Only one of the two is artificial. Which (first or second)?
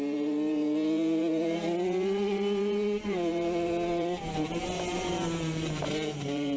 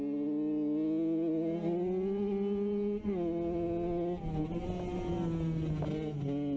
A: first